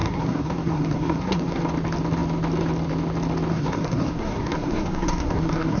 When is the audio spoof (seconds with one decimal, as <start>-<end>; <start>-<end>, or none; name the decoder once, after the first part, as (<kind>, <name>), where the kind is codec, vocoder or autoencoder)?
0.0-1.6 (codec, SNAC); 3.5-5.8